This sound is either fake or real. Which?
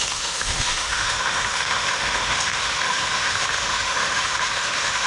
fake